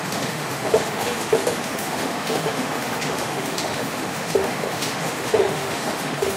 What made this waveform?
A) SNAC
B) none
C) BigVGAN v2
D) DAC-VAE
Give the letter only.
D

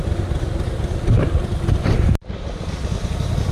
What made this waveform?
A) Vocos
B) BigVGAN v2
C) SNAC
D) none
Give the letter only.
D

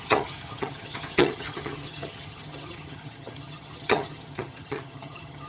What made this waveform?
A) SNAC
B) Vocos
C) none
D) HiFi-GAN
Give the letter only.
D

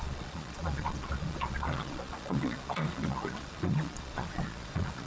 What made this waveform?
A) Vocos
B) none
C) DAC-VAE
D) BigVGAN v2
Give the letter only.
A